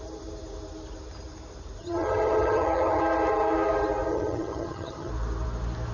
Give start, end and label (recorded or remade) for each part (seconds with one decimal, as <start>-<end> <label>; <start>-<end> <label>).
0.0-1.8 recorded; 1.8-3.0 remade; 3.0-4.1 recorded; 4.1-5.1 remade; 5.1-5.9 recorded